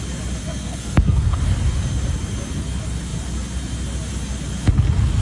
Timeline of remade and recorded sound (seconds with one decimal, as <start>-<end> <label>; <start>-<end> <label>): 0.0-0.4 recorded; 0.4-1.4 remade; 1.4-5.2 recorded